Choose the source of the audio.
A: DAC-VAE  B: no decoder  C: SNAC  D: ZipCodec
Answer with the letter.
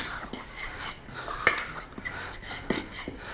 B